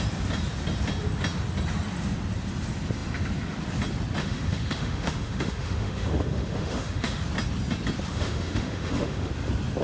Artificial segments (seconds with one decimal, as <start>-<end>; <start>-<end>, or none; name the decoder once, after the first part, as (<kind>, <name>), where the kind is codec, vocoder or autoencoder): 4.2-7.2 (autoencoder, DAC-VAE); 8.1-9.3

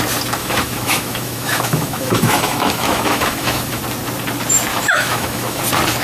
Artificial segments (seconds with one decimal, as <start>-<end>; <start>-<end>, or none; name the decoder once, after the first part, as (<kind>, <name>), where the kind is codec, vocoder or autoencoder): 0.4-3.8 (autoencoder, DAC-VAE); 4.7-5.6

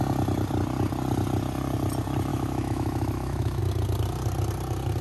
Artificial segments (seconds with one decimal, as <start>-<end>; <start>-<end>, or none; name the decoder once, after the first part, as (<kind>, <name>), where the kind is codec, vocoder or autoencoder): 2.3-3.6 (autoencoder, DAC-VAE)

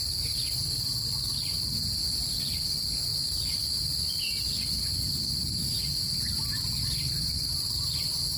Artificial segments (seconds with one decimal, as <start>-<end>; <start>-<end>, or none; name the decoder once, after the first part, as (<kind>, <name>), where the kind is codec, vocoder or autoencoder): none

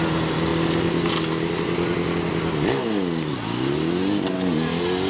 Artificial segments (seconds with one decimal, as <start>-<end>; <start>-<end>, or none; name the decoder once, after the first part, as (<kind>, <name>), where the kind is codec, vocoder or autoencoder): none

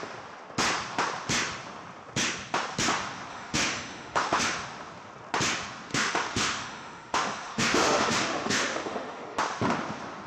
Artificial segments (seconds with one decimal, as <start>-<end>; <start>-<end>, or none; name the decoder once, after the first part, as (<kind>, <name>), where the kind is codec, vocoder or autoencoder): 3.3-4.4 (autoencoder, DAC-VAE); 5.9-9.4

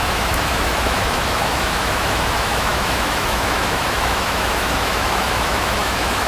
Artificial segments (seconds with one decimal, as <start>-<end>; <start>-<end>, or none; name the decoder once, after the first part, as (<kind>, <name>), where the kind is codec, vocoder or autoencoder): 0.0-6.3 (autoencoder, DAC-VAE)

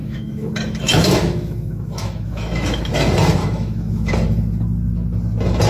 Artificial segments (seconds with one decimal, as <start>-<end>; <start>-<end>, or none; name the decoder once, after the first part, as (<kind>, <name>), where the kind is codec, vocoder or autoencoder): 0.0-2.9 (autoencoder, DAC-VAE); 3.4-4.1